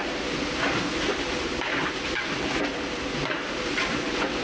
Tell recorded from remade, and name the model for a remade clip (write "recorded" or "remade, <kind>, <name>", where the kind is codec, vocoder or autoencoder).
remade, vocoder, BigVGAN v2